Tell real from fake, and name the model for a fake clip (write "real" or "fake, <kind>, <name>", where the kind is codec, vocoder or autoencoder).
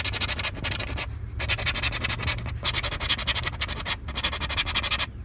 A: real